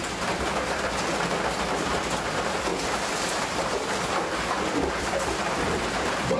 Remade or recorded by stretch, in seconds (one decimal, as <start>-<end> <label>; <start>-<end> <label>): 0.0-6.4 recorded